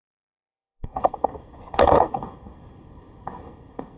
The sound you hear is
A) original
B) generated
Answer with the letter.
B